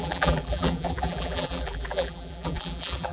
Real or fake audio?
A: fake